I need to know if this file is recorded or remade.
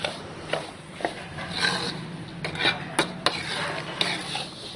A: recorded